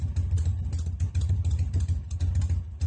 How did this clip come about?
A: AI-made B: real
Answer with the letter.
B